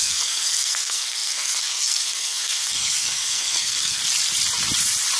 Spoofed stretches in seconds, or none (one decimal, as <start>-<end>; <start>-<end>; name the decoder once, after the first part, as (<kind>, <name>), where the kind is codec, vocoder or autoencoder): 0.0-4.0 (codec, SNAC)